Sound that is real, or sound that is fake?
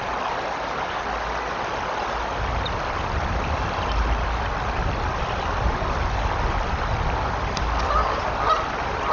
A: real